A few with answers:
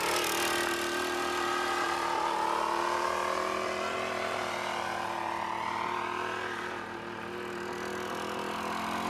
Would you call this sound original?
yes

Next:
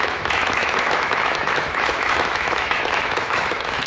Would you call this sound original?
no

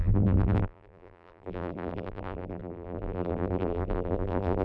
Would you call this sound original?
no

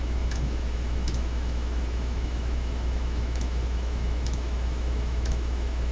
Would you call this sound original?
no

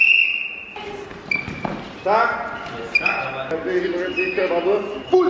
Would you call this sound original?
yes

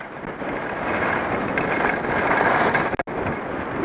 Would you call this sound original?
yes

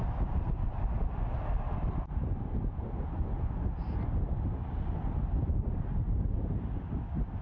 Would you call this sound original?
yes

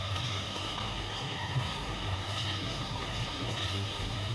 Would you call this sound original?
no